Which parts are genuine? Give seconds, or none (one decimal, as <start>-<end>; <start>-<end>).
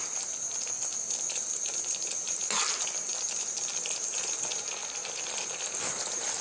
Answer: 0.0-3.1; 3.6-6.4